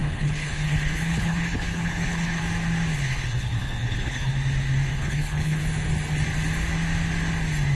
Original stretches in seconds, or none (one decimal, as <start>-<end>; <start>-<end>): 2.4-3.1; 4.3-4.9; 5.6-7.7